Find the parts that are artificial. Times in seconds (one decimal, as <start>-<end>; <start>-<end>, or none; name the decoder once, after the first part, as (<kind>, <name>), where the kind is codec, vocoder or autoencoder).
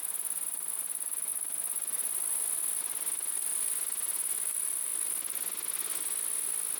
0.0-1.3 (vocoder, BigVGAN v2); 2.7-3.5; 4.5-4.9